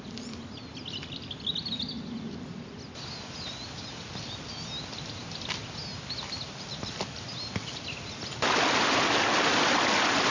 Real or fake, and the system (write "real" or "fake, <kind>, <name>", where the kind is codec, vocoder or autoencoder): real